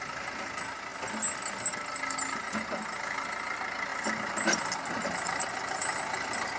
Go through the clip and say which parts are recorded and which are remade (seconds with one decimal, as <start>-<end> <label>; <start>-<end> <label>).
0.0-6.6 recorded